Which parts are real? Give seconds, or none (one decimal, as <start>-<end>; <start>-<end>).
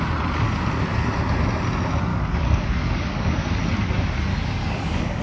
0.0-2.1; 3.6-4.3